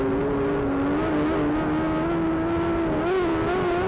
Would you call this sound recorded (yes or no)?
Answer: yes